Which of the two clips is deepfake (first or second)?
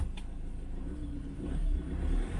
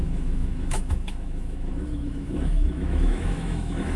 second